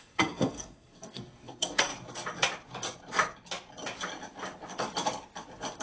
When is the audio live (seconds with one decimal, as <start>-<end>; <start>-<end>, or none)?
1.9-5.8